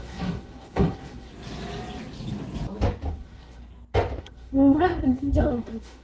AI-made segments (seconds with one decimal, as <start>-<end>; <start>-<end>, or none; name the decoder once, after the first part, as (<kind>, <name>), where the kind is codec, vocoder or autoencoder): 0.0-1.3 (codec, SNAC); 3.1-3.6; 4.2-6.0